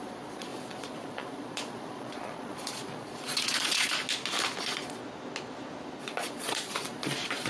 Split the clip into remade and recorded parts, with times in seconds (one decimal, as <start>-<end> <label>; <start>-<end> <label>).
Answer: 0.0-4.0 remade; 4.0-4.6 recorded; 4.6-5.0 remade; 5.0-6.0 recorded; 6.0-7.5 remade